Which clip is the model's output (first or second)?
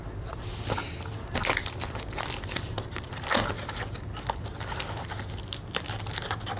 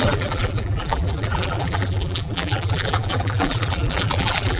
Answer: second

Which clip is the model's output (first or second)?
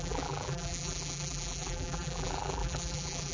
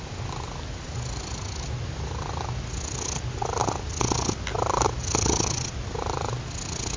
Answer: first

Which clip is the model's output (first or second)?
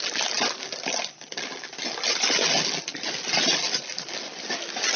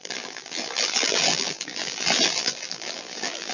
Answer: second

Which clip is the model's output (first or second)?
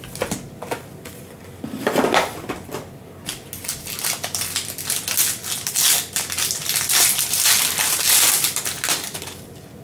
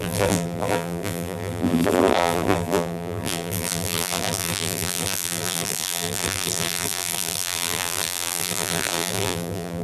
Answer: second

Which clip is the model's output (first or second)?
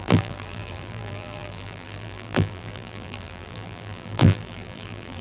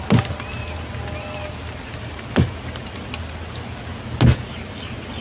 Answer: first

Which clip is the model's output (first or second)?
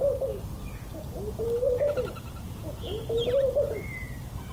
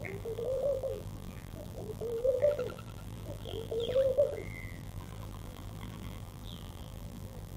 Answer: second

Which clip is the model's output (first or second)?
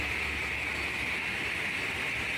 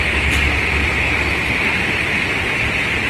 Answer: second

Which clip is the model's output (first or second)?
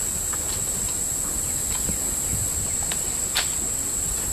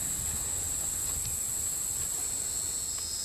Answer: first